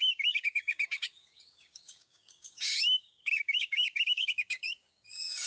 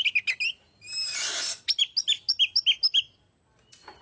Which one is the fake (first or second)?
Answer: first